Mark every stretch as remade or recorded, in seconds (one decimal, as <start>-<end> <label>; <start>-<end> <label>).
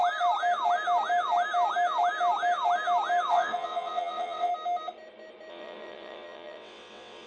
0.0-3.3 recorded; 3.3-4.5 remade; 4.5-5.5 recorded; 5.5-7.3 remade